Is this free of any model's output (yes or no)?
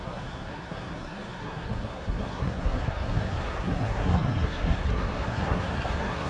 no